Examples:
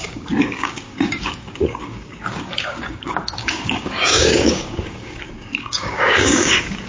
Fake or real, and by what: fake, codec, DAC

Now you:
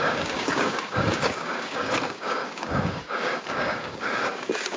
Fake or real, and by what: fake, codec, DAC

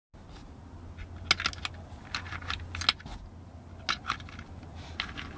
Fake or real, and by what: real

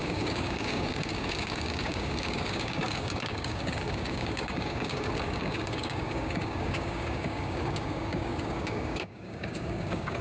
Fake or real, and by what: fake, codec, DAC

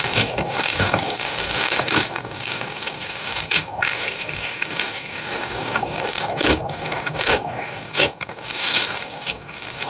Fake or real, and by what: fake, codec, DAC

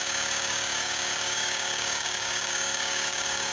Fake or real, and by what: fake, codec, DAC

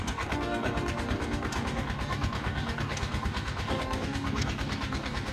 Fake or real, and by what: fake, codec, DAC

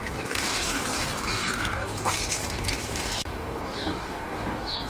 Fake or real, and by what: fake, codec, DAC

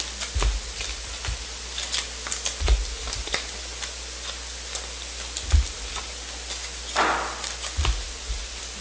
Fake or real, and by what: real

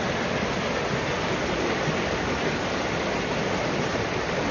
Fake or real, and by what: real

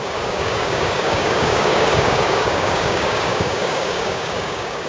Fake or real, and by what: fake, codec, DAC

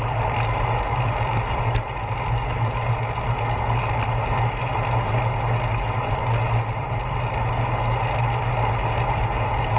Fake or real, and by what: real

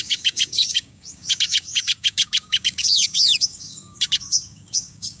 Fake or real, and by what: fake, codec, DAC